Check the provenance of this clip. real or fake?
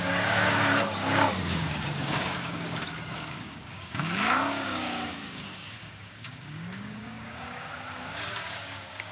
fake